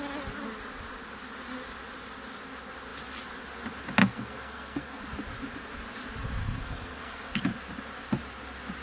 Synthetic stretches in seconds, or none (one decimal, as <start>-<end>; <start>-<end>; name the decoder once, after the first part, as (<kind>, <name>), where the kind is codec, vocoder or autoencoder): 4.0-5.0 (codec, SNAC); 6.4-7.4